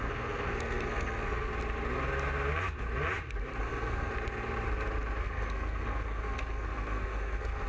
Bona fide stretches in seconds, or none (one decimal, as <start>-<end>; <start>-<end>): 1.5-3.6; 4.1-5.2